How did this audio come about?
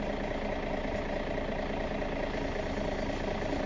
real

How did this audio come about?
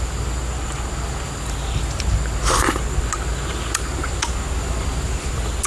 real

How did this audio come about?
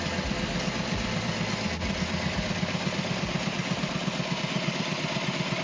fake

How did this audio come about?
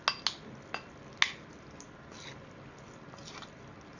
real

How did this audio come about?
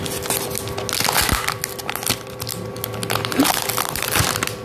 real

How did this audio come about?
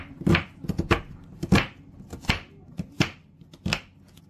real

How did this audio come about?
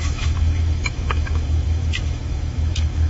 fake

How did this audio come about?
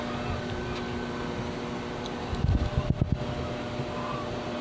real